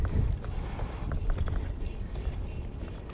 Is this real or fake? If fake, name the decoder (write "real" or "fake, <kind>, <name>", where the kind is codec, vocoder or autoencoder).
fake, vocoder, BigVGAN v2